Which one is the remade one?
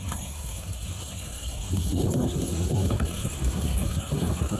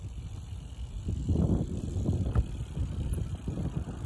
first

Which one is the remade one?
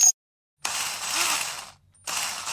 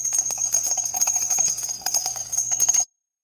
second